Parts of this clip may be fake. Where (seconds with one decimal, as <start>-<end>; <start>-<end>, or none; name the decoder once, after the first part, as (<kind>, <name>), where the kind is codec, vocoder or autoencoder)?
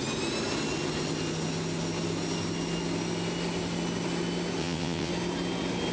4.6-5.1 (vocoder, WaveNeXt)